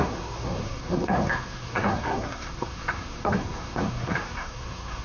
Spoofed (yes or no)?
yes